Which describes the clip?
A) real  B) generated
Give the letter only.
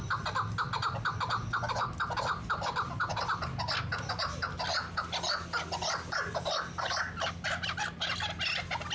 A